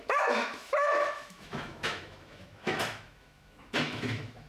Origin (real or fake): fake